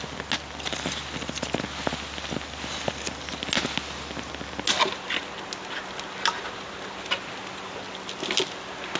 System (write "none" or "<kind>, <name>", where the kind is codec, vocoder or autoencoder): none